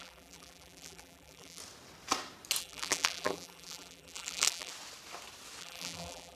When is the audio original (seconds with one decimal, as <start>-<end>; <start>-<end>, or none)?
1.6-2.6; 4.7-5.6

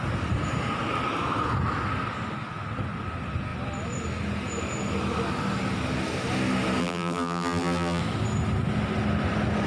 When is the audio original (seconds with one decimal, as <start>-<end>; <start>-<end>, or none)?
0.0-6.8; 8.0-9.7

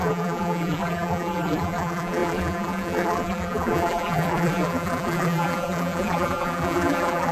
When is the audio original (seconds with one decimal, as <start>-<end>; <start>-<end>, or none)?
none

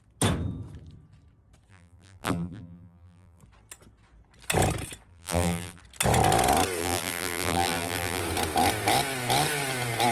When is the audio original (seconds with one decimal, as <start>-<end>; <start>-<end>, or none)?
0.0-1.7; 3.4-5.1; 5.8-6.8; 8.2-10.1